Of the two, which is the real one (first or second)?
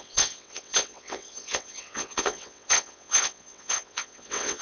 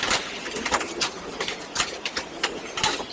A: second